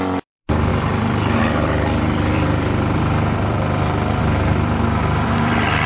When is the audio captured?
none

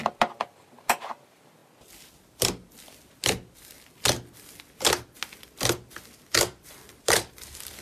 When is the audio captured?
1.6-6.0

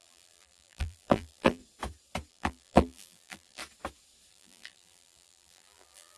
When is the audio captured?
1.6-2.3; 3.6-4.3

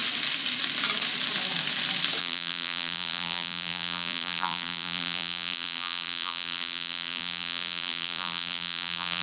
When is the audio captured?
0.0-2.2